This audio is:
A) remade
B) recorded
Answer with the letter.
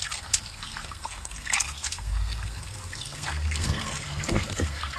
A